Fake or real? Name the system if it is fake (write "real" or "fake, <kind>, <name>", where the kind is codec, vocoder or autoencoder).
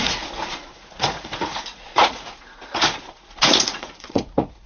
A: fake, vocoder, Vocos